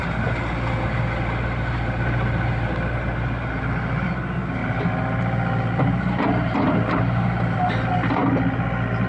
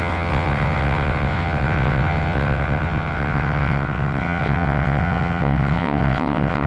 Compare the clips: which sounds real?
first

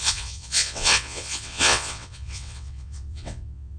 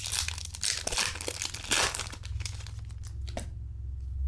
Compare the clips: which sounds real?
second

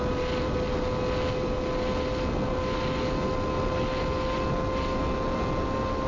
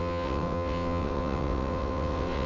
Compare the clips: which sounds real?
first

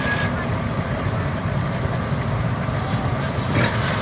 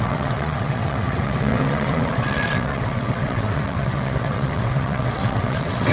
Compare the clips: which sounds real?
first